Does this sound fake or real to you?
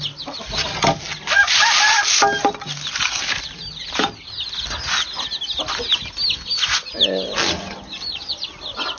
real